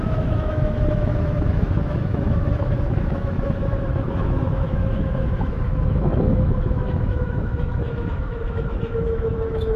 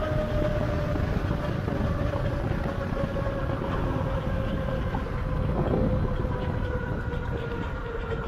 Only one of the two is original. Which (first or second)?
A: second